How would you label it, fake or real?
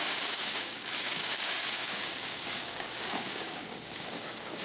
fake